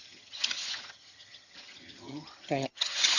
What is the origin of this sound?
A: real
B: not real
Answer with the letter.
B